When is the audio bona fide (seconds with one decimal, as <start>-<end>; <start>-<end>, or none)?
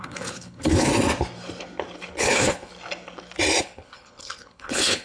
0.9-2.2; 2.7-3.6